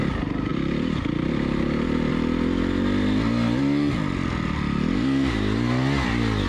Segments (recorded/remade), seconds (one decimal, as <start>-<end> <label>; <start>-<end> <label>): 0.0-0.5 recorded; 0.5-2.1 remade; 2.1-6.5 recorded